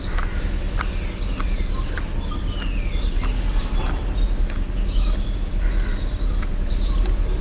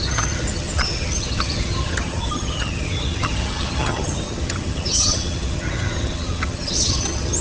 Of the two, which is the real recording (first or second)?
first